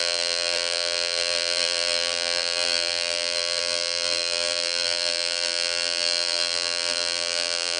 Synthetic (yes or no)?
yes